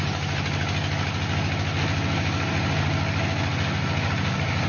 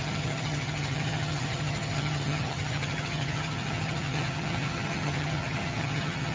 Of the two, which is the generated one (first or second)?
second